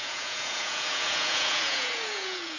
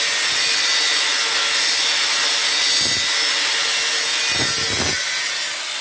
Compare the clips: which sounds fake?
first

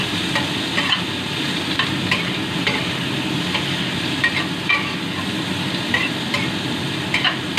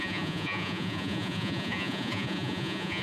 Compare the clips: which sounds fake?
second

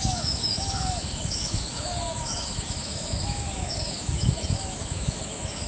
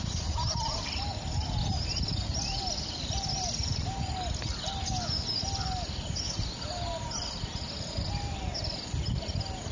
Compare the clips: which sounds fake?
first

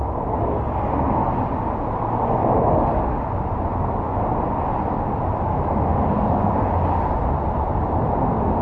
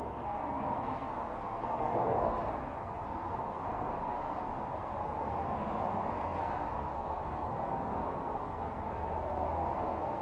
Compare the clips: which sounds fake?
second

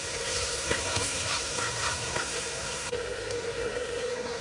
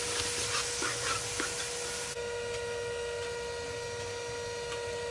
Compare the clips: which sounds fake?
first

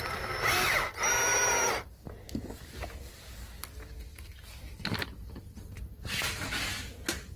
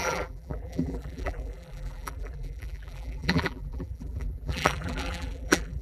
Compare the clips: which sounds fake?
second